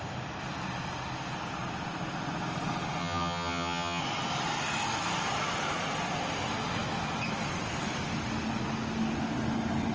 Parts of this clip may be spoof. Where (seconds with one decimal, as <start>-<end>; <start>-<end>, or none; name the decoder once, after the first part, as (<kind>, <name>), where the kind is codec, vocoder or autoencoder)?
3.0-4.0 (vocoder, HiFi-GAN)